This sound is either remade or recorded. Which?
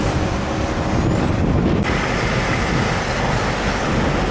recorded